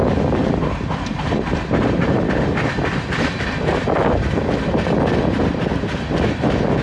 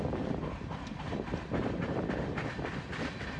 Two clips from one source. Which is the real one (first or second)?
first